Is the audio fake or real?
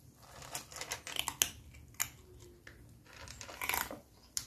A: real